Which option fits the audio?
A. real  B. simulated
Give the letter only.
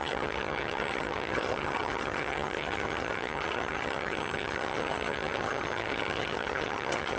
B